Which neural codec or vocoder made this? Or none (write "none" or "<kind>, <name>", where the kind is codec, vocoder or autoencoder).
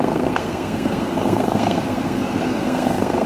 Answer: codec, SNAC